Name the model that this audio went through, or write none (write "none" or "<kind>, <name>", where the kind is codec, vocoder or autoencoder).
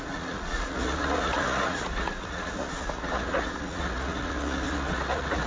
vocoder, Vocos